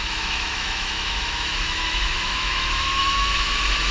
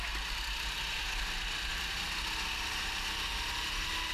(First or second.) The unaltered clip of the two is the second